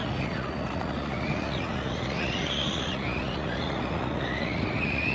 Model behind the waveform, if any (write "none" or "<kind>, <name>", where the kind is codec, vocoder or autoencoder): vocoder, Vocos